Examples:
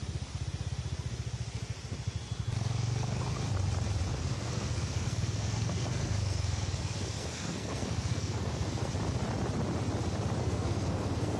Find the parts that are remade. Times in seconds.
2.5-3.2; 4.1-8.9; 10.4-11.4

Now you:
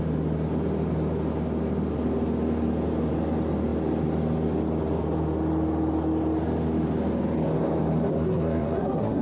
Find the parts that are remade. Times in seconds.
8.1-9.2

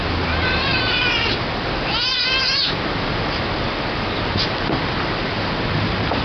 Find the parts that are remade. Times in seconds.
none

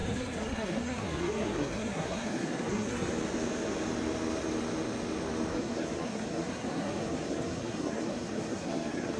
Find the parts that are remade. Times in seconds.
0.0-3.1; 5.5-9.2